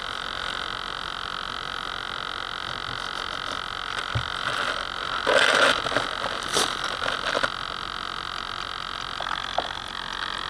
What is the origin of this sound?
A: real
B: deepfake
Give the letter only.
A